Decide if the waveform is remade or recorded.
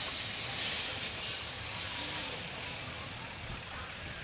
recorded